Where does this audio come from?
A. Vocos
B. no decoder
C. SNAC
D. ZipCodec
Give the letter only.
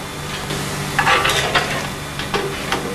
B